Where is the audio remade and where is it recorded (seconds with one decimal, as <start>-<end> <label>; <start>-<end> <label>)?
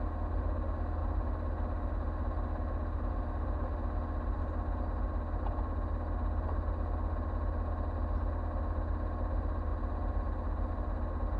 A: 0.0-11.4 recorded